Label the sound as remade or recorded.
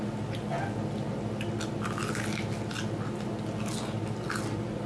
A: recorded